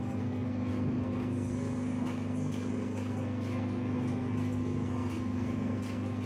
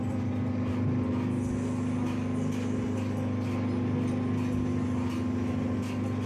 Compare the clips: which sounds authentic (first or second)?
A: second